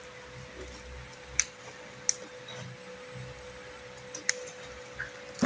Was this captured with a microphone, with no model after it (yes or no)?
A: yes